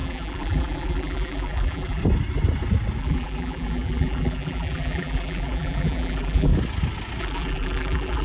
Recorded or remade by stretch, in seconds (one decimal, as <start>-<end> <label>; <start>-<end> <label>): 0.0-2.0 remade; 2.0-3.0 recorded; 3.0-6.5 remade; 6.5-7.2 recorded; 7.2-8.2 remade